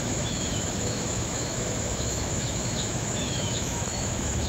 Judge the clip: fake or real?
fake